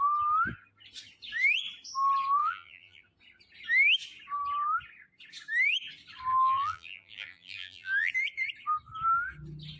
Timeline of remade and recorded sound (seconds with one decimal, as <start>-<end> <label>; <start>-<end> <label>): 0.0-2.4 recorded; 2.4-3.0 remade; 3.0-6.3 recorded; 6.3-8.1 remade; 8.1-9.8 recorded